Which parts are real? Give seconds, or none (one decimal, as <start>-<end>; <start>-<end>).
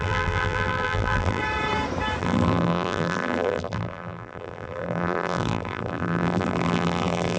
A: 1.4-2.2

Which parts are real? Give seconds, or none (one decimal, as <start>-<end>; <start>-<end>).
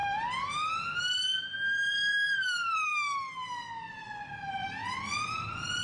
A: 0.0-1.0; 2.9-4.5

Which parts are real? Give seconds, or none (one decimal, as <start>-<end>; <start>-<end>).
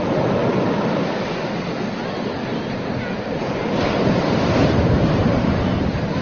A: 0.4-4.1